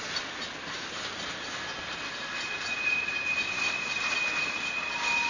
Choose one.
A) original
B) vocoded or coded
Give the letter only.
A